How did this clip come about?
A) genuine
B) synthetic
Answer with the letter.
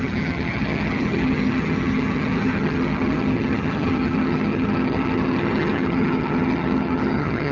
B